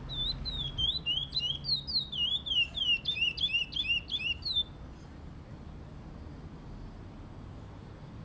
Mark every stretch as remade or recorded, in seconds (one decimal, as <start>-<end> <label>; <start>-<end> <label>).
0.0-8.2 recorded